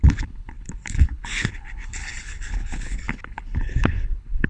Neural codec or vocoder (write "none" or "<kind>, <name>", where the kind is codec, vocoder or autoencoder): codec, HILCodec